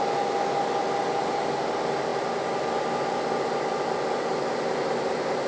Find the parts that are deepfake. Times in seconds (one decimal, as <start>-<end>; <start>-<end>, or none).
none